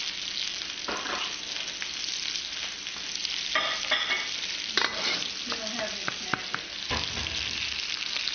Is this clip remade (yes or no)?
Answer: no